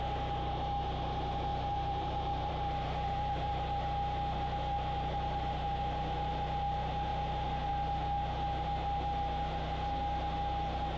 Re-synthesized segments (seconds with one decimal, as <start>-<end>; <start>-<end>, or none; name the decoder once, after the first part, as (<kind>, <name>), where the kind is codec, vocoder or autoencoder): 1.5-3.5 (vocoder, BigVGAN v2)